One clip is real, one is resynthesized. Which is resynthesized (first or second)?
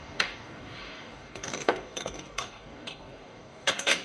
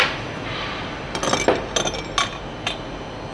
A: first